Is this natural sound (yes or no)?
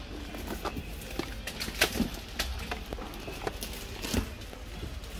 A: yes